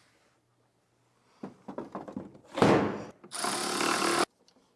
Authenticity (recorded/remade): recorded